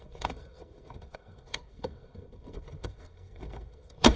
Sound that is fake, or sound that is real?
fake